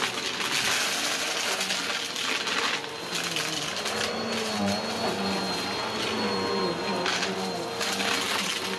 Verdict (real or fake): real